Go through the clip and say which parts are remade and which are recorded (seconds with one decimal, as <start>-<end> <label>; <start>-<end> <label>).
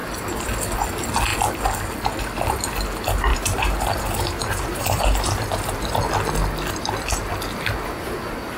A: 0.0-3.3 recorded; 3.3-6.0 remade; 6.0-8.6 recorded